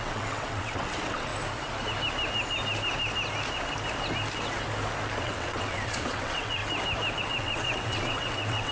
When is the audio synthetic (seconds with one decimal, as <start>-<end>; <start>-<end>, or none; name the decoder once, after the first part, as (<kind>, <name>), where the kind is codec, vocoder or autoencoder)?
0.0-1.3 (vocoder, WaveNeXt); 5.2-6.6; 7.2-8.7